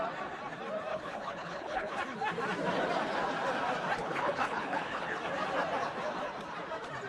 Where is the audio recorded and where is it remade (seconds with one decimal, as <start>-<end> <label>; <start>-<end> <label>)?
0.0-0.9 recorded; 0.9-2.0 remade; 2.0-4.0 recorded; 4.0-5.2 remade; 5.2-7.1 recorded